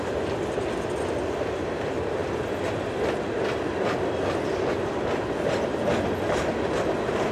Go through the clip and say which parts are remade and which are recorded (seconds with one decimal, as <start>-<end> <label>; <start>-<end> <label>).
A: 0.0-7.3 recorded